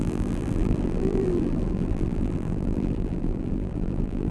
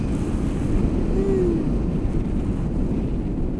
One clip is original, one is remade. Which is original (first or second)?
second